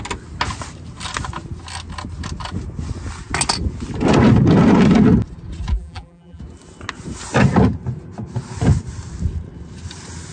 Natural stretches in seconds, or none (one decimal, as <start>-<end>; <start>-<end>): 0.0-5.7; 6.4-10.3